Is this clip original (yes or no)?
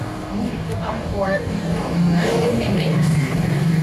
no